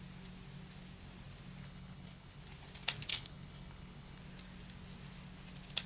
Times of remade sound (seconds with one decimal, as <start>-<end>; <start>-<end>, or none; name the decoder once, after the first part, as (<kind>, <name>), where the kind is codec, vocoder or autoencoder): 1.6-2.4 (codec, HILCodec); 3.1-4.2